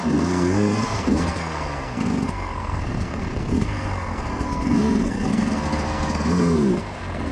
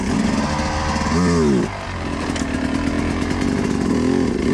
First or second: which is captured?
second